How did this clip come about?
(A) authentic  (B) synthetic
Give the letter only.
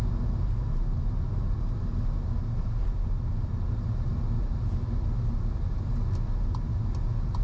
A